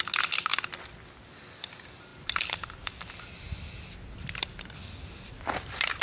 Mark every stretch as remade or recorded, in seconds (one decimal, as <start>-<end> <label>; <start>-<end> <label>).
0.0-6.0 recorded